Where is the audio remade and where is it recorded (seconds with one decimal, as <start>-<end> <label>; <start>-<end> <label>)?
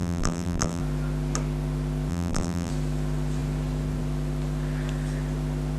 0.0-0.8 remade; 0.8-2.1 recorded; 2.1-2.7 remade; 2.7-5.8 recorded